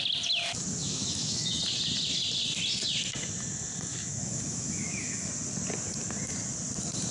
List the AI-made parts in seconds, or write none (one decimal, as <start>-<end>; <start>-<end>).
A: 0.8-1.6; 3.9-5.3